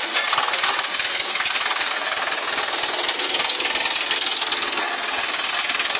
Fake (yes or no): no